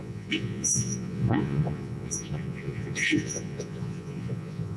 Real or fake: fake